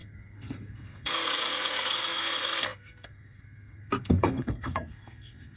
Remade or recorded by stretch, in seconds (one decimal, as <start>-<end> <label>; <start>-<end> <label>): 0.0-5.6 remade